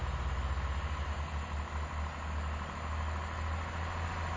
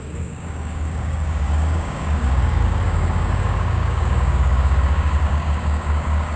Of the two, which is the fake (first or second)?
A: second